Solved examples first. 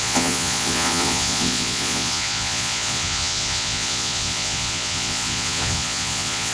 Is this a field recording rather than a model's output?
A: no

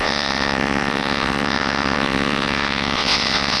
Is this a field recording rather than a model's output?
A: no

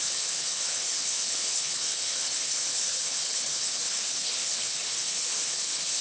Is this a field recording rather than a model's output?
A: no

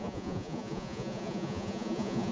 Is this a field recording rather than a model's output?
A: no